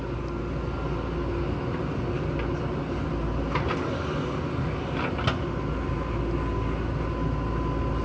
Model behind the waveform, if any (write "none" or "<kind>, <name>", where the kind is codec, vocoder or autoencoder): none